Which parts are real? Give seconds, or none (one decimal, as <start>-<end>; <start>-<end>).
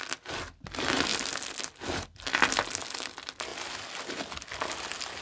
0.0-5.2